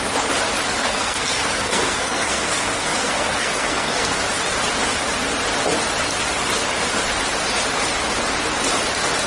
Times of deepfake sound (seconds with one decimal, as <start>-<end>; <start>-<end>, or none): 0.8-4.2